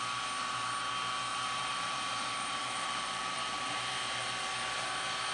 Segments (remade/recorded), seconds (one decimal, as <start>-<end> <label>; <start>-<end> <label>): 0.0-1.3 recorded; 1.3-4.5 remade; 4.5-5.3 recorded